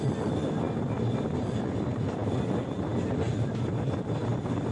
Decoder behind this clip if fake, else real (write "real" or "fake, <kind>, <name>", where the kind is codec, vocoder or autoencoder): fake, vocoder, BigVGAN v2